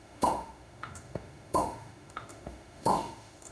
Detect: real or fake fake